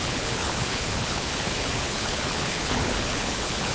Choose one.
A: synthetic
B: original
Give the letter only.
A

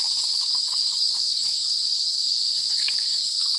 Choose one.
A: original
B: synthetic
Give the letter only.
B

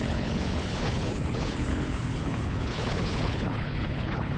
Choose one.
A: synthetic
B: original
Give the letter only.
A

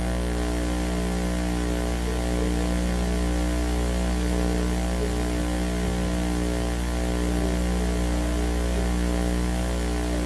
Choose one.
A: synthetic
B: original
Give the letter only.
B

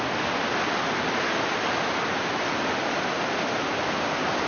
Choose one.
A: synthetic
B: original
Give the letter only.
B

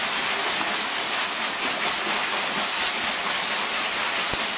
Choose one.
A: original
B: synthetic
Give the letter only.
A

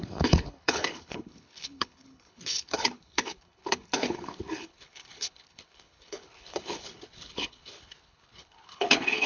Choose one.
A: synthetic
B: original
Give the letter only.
A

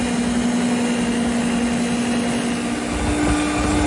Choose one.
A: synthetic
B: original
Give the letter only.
B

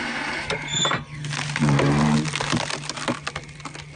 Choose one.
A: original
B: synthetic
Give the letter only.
A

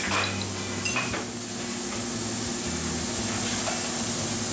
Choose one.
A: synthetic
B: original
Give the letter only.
B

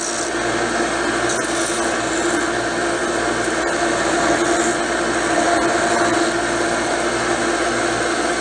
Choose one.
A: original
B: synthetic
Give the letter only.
A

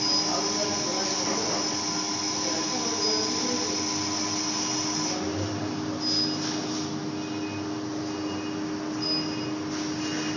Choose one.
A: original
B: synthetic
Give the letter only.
A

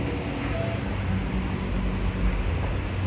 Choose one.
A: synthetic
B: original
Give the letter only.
B